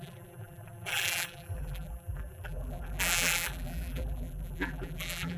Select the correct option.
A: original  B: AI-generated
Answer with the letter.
B